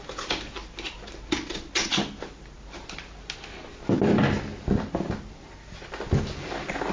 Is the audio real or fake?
real